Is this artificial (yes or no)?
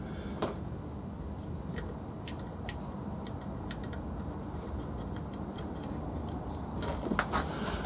no